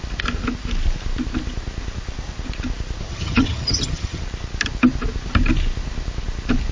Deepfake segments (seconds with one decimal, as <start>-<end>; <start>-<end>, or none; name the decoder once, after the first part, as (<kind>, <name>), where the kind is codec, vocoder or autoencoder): 3.1-4.2 (vocoder, HiFi-GAN)